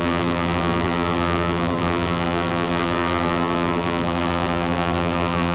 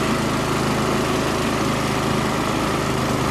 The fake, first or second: first